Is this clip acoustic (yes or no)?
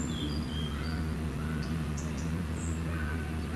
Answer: no